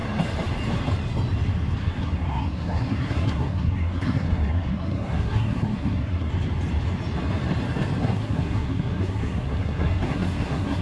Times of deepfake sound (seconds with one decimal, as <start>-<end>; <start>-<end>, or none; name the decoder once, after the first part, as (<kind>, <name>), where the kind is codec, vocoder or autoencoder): 1.8-6.3 (codec, SNAC); 8.0-10.8